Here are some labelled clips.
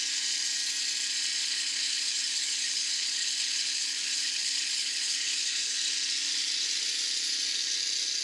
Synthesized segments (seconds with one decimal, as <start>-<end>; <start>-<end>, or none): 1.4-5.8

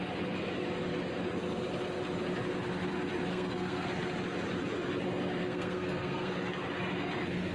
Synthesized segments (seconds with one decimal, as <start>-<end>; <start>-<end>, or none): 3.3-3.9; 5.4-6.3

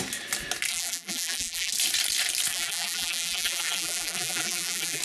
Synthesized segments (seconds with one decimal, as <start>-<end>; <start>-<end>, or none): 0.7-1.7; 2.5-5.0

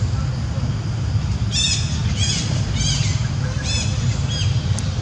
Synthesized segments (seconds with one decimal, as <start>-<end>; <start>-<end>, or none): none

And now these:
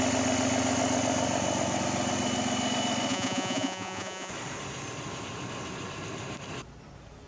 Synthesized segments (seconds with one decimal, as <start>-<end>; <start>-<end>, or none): 3.1-4.3

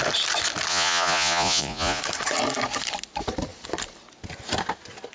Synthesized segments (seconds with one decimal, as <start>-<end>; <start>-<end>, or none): 0.7-2.0

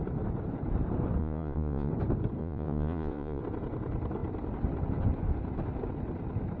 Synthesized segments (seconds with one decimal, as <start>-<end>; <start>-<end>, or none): 1.2-1.9; 2.4-3.4